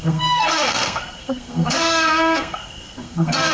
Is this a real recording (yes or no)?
no